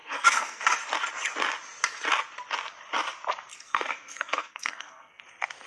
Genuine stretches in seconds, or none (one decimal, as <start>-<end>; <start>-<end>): 0.6-3.5; 5.2-5.7